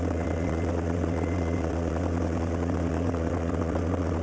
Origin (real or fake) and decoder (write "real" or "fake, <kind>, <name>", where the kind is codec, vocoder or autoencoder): fake, vocoder, WaveNeXt